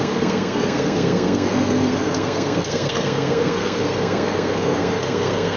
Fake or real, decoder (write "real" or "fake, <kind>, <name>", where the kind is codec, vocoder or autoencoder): fake, codec, SNAC